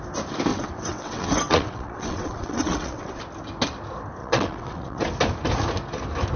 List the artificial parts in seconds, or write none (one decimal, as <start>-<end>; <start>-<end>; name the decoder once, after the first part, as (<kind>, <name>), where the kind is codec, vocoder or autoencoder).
0.5-3.2 (vocoder, WaveNeXt); 4.2-5.0